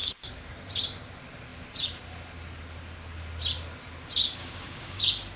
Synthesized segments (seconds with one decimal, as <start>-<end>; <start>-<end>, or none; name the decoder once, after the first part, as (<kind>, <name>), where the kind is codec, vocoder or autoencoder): 0.0-0.5 (codec, DAC); 4.4-5.0